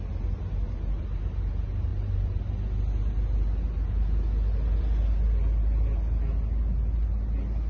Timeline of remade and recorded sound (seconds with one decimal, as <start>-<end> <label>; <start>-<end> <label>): 0.0-1.9 recorded; 1.9-2.4 remade; 2.4-7.7 recorded